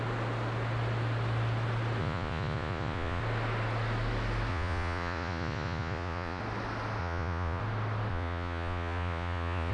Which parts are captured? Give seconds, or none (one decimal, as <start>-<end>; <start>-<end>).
0.0-2.0; 3.2-4.5; 6.4-7.0; 7.6-8.1